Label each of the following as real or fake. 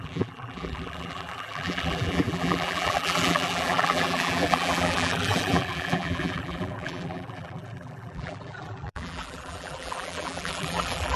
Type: fake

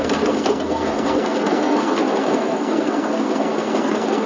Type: fake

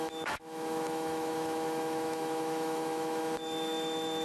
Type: fake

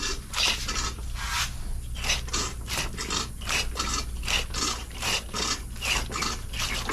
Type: real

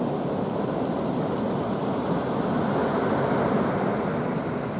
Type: real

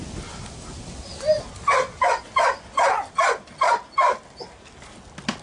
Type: real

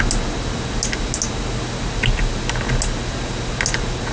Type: real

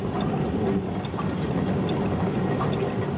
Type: real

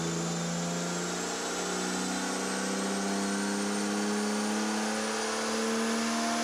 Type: real